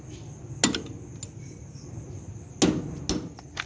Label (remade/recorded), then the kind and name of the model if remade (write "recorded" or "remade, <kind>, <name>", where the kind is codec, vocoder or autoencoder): recorded